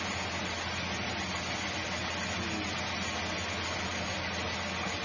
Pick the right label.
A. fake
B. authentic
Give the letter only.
B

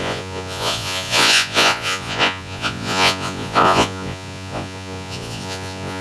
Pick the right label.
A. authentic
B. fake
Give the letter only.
B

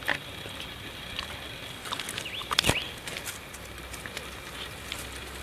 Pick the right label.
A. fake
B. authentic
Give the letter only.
B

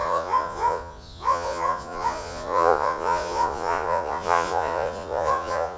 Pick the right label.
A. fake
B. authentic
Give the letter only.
A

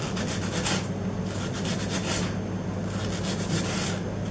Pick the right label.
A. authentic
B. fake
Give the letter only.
A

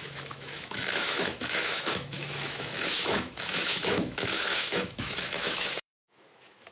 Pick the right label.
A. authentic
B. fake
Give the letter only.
B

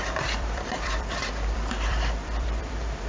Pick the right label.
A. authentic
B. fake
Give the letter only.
B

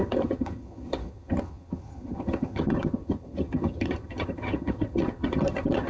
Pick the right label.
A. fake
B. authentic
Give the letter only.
A